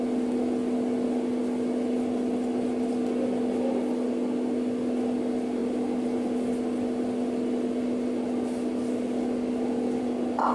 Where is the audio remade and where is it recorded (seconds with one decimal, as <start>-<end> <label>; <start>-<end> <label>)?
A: 0.0-10.5 recorded